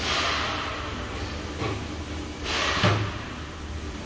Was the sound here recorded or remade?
recorded